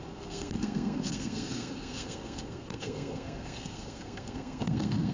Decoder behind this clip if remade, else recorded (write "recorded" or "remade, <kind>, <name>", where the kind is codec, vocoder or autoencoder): remade, codec, SNAC